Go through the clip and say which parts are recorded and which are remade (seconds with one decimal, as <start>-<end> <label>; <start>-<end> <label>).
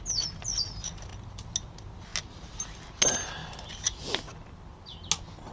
0.0-5.5 recorded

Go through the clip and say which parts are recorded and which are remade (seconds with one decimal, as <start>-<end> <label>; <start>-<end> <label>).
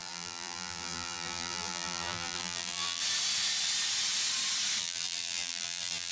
0.0-3.0 remade; 3.0-4.8 recorded; 4.8-6.1 remade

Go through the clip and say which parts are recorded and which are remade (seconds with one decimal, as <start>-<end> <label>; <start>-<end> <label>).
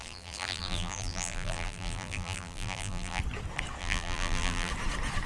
0.0-3.2 remade; 3.2-3.8 recorded; 3.8-4.7 remade; 4.7-5.3 recorded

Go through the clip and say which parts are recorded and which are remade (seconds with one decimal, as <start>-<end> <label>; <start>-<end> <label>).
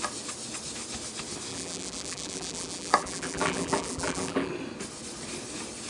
0.0-1.5 recorded; 1.5-4.5 remade; 4.5-5.9 recorded